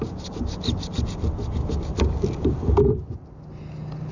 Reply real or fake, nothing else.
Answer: real